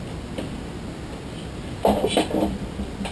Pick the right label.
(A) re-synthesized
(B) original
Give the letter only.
B